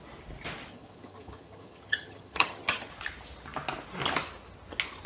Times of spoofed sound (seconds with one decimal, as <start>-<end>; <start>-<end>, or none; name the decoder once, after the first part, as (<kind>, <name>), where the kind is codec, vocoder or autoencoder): 0.7-2.9 (vocoder, HiFi-GAN)